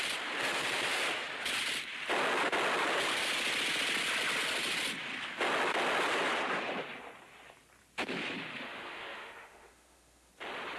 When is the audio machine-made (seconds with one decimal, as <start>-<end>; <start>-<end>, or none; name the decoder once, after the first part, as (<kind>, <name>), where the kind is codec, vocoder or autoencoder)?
8.5-10.3 (autoencoder, DAC-VAE)

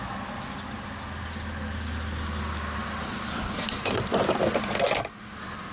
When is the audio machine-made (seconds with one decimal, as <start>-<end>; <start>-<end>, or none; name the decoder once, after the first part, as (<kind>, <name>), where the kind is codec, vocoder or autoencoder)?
none

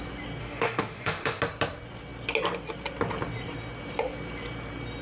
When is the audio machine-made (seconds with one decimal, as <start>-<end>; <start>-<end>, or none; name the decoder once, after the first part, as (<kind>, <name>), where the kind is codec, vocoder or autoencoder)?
0.4-1.4 (autoencoder, DAC-VAE)

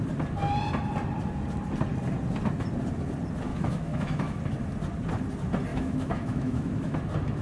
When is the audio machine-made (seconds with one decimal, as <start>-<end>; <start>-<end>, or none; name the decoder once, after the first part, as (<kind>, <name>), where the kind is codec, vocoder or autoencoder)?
3.5-4.4 (autoencoder, DAC-VAE); 5.7-7.0

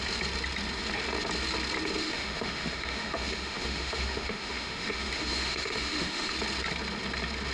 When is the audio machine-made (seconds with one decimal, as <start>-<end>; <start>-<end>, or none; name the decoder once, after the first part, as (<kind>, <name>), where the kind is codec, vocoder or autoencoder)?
2.0-6.3 (autoencoder, DAC-VAE)

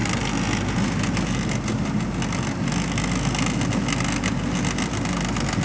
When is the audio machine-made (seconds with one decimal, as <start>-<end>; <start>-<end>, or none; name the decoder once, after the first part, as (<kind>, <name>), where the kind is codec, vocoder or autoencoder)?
none

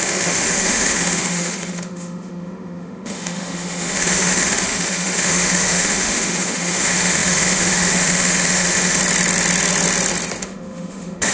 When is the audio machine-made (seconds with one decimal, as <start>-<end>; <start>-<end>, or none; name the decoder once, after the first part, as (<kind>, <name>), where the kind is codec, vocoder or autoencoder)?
0.0-9.0 (autoencoder, DAC-VAE); 10.4-11.3